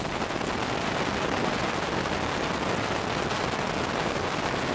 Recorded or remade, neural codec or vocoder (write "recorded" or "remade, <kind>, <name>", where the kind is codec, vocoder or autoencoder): recorded